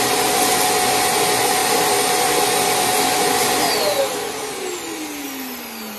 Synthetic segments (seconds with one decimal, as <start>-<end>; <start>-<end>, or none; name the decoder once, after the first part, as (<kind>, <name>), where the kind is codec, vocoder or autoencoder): none